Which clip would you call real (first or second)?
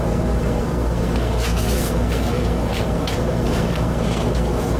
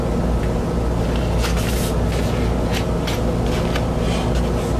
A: second